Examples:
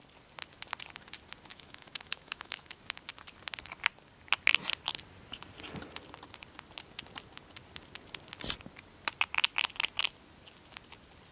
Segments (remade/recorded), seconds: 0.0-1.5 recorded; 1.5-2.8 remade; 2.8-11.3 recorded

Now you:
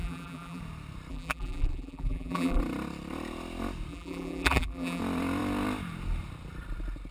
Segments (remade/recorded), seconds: 0.0-0.6 remade; 0.6-1.1 recorded; 1.1-2.6 remade; 2.6-3.9 recorded; 3.9-5.0 remade; 5.0-7.1 recorded

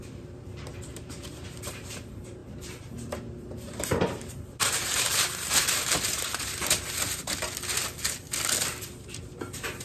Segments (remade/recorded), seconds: 0.0-7.2 remade; 7.2-8.8 recorded; 8.8-9.8 remade

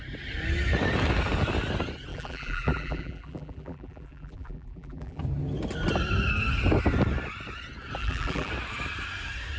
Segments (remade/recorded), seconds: 0.0-2.1 recorded; 2.1-5.2 remade; 5.2-8.0 recorded; 8.0-8.5 remade; 8.5-9.6 recorded

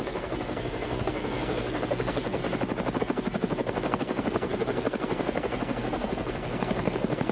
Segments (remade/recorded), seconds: 0.0-2.4 remade; 2.4-3.0 recorded; 3.0-7.3 remade

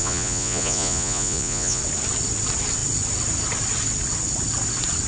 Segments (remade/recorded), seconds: 0.0-1.8 remade; 1.8-5.1 recorded

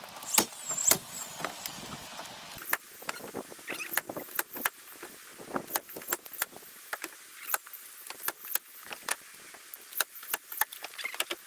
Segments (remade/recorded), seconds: 0.0-0.8 recorded; 0.8-1.4 remade; 1.4-11.5 recorded

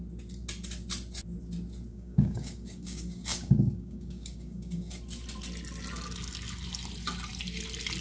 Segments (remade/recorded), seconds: 0.0-1.9 recorded; 1.9-4.9 remade; 4.9-8.0 recorded